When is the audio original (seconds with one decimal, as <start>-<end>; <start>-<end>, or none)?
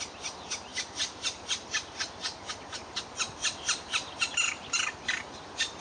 0.0-5.8